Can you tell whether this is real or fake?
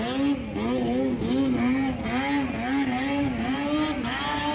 real